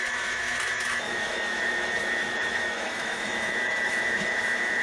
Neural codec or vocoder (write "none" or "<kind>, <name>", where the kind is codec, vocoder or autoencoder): autoencoder, DAC-VAE